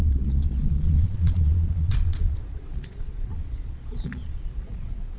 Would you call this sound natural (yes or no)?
no